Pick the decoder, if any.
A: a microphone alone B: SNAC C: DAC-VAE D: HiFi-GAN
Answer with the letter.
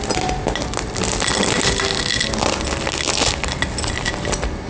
A